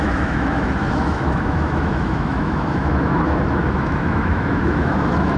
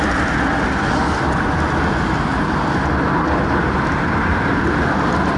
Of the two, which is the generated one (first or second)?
first